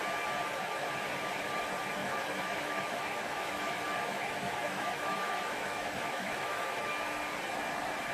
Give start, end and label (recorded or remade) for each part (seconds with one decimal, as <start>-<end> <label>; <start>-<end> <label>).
0.0-0.4 recorded; 0.4-0.9 remade; 0.9-2.0 recorded; 2.0-6.9 remade; 6.9-8.1 recorded

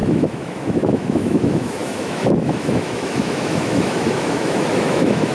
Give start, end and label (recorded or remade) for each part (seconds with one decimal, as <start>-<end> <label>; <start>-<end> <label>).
0.0-5.3 remade

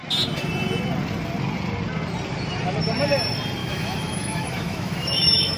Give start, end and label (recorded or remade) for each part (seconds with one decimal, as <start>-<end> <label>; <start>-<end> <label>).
0.0-3.6 recorded; 3.6-5.6 remade

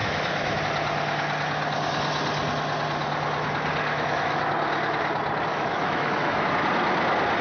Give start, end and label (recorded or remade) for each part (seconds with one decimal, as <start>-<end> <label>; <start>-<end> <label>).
0.0-0.6 remade; 0.6-3.9 recorded; 3.9-4.5 remade; 4.5-5.5 recorded; 5.5-6.5 remade; 6.5-7.4 recorded

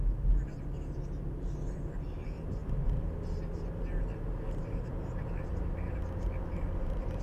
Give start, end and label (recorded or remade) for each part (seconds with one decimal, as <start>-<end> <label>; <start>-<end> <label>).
0.0-7.2 recorded

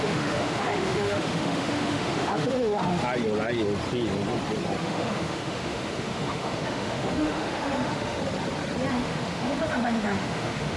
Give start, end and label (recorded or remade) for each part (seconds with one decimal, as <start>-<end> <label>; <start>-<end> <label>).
0.0-3.0 remade; 3.0-4.8 recorded; 4.8-8.2 remade; 8.2-8.9 recorded; 8.9-10.8 remade

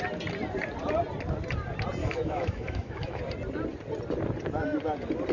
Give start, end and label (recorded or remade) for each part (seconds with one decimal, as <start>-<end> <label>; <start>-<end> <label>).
0.0-2.0 recorded; 2.0-3.2 remade; 3.2-5.3 recorded